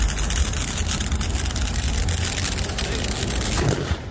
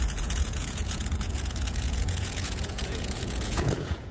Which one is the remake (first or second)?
second